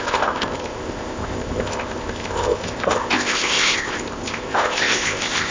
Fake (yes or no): yes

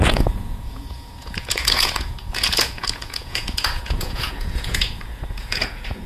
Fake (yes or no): yes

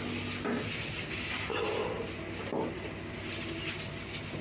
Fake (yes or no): no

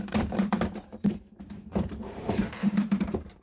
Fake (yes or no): yes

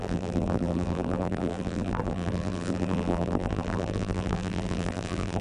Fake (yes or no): yes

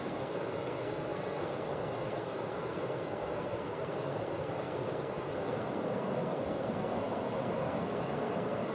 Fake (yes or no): yes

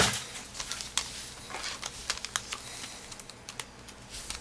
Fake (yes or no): no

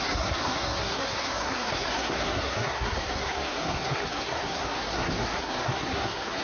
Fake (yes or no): yes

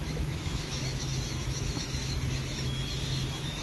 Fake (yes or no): yes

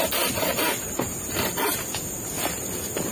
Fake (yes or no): no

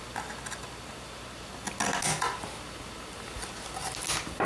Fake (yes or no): no